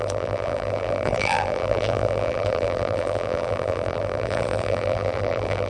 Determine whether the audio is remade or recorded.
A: remade